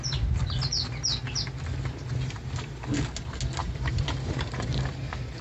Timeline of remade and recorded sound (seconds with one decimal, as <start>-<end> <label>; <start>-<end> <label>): 0.0-3.6 recorded; 3.6-4.3 remade; 4.3-5.4 recorded